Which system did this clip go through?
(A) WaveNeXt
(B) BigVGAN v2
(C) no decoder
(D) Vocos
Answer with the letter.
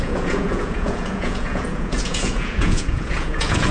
D